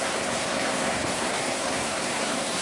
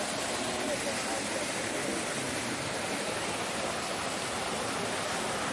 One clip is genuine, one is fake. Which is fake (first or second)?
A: first